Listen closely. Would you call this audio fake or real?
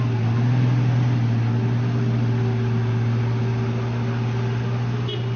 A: real